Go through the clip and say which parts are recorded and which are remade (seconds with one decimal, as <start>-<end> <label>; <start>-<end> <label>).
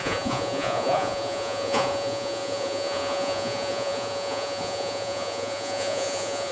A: 0.0-6.5 remade